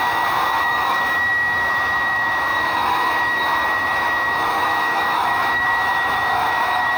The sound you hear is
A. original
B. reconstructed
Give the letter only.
B